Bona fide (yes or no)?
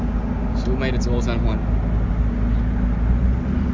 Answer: yes